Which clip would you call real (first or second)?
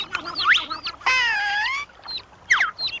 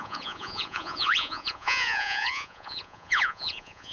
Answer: first